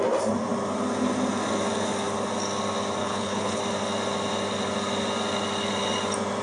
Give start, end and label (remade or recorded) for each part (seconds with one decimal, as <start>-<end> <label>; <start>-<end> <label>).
0.0-3.0 recorded; 3.0-3.6 remade; 3.6-6.4 recorded